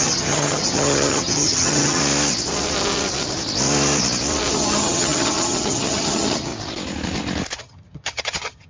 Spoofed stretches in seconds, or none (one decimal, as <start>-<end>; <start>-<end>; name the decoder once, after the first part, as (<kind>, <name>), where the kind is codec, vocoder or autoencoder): 0.0-2.0 (vocoder, HiFi-GAN); 4.5-6.5; 7.6-8.7